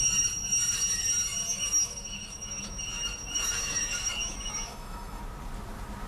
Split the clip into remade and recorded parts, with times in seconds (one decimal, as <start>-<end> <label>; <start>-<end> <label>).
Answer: 0.0-1.5 recorded; 1.5-5.2 remade; 5.2-6.1 recorded